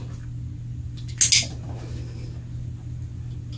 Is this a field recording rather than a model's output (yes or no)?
yes